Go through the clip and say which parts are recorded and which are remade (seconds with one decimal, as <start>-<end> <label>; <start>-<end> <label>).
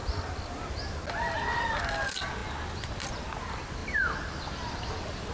0.0-5.3 recorded